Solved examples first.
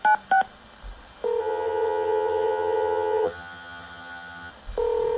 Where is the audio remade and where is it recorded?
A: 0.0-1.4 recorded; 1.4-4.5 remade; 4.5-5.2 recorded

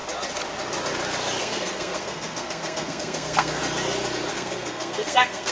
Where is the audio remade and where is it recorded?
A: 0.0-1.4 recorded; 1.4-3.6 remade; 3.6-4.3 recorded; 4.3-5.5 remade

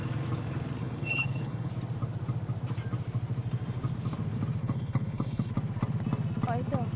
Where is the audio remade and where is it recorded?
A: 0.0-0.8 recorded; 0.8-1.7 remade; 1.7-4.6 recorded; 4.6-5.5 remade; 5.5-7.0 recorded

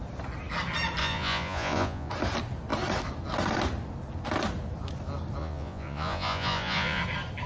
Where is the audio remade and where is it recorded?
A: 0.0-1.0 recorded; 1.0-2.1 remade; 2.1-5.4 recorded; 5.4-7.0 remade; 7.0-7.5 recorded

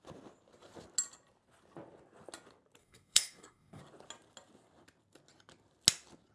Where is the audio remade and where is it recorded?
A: 0.0-2.8 recorded; 2.8-3.8 remade; 3.8-6.3 recorded